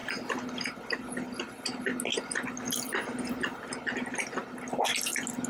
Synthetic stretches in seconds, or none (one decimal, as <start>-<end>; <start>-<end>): none